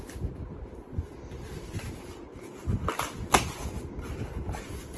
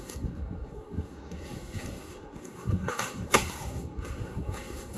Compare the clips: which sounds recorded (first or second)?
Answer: first